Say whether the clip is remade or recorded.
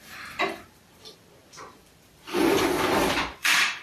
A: remade